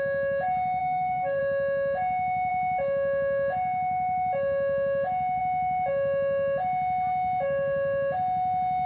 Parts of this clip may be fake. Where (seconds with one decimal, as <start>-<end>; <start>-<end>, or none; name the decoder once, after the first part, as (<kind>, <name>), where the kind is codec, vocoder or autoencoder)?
0.8-1.4 (codec, SNAC)